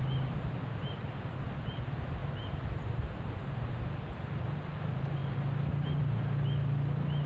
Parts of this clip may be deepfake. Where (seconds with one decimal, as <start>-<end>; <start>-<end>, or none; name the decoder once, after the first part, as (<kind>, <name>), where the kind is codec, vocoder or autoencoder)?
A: none